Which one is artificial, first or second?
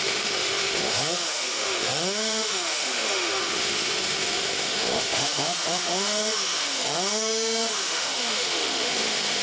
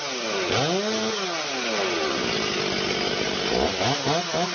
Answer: first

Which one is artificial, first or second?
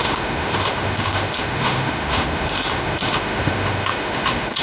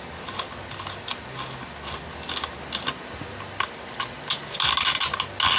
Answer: first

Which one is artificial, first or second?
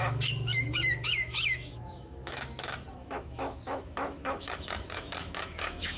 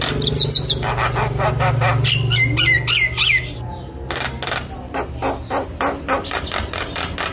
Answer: first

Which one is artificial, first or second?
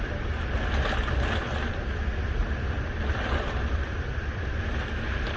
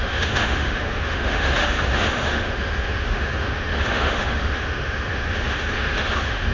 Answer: second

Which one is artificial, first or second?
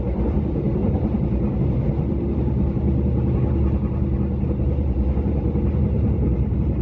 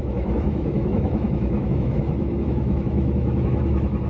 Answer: second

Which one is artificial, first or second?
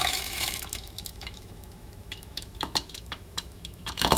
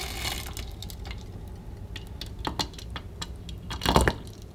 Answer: first